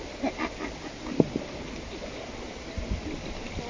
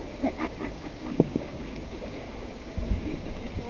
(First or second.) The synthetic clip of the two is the second